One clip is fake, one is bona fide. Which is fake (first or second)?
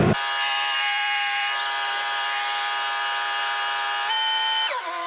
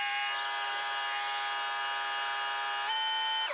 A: first